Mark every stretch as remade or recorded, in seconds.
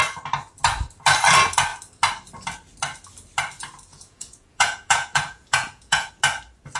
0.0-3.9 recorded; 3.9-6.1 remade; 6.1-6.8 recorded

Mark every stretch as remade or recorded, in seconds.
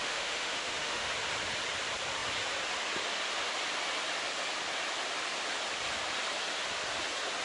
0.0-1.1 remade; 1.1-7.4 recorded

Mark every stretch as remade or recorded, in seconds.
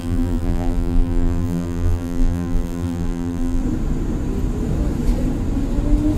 0.0-3.6 remade; 3.6-6.2 recorded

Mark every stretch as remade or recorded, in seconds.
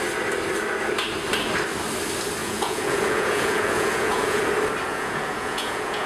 0.0-2.4 recorded; 2.4-4.4 remade; 4.4-4.9 recorded; 4.9-6.1 remade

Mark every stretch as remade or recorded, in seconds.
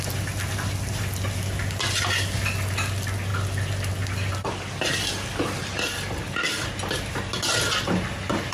0.0-8.5 recorded